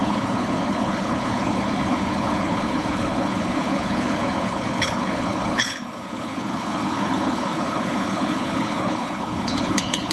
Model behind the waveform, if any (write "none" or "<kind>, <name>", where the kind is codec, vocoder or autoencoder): codec, HILCodec